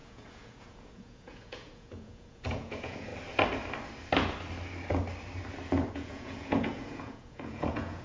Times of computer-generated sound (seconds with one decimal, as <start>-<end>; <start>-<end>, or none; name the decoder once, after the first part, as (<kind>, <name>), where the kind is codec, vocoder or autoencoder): 0.0-3.1 (vocoder, Vocos); 5.9-8.0